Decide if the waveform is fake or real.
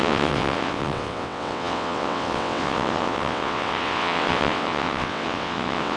fake